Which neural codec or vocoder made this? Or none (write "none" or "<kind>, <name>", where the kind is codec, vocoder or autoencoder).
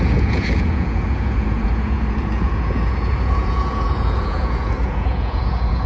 vocoder, Vocos